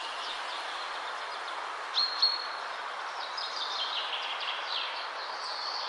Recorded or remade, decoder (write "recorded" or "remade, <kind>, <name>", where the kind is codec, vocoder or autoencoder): remade, vocoder, BigVGAN v2